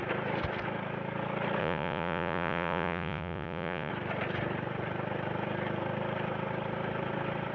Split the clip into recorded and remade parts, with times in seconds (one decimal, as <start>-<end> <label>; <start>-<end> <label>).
0.0-1.6 recorded; 1.6-3.9 remade; 3.9-7.5 recorded

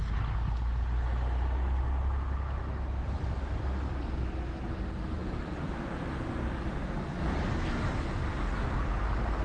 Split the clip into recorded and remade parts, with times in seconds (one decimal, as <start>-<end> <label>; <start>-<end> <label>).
0.0-9.4 recorded